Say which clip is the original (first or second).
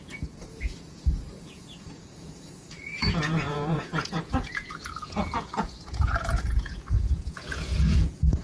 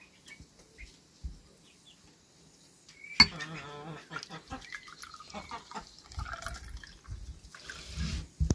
second